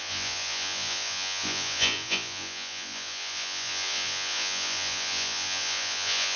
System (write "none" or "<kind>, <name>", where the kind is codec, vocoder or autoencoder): vocoder, Vocos